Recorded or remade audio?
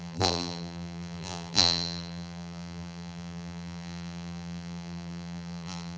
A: remade